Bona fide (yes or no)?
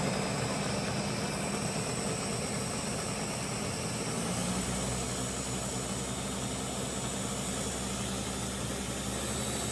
yes